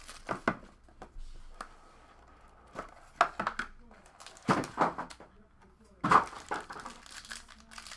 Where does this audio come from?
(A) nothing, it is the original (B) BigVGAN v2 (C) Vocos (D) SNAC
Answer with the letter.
A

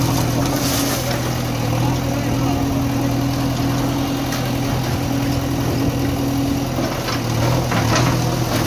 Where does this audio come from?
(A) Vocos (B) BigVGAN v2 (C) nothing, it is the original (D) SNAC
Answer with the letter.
C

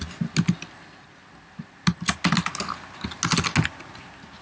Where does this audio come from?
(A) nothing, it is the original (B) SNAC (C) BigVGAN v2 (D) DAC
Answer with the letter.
A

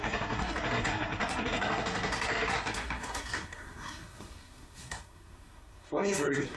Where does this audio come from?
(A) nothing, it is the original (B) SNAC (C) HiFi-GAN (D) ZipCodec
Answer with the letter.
B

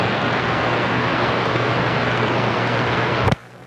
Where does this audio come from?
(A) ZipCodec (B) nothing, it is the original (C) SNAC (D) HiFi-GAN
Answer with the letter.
C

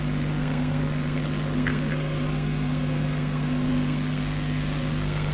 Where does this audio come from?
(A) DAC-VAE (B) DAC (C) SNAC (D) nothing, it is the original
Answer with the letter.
C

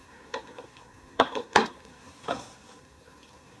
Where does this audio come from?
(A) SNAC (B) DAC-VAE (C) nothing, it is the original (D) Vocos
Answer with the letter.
A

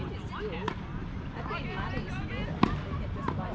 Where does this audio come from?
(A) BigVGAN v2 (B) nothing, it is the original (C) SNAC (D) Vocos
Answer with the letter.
B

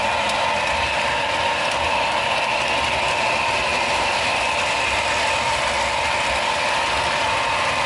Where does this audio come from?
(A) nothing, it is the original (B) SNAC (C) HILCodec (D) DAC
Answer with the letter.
A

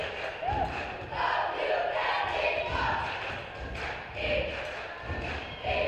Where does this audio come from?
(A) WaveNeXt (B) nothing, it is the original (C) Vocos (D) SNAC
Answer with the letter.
B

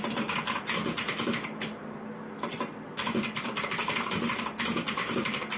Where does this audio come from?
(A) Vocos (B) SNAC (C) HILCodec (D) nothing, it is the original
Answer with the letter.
D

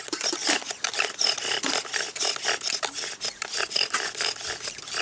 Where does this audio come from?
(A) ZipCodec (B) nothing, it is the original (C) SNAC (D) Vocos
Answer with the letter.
B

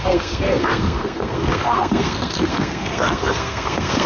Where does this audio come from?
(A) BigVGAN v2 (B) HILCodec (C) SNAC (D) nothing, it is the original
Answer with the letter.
C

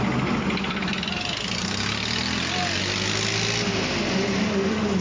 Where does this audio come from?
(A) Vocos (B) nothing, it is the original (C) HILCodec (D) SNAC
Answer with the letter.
B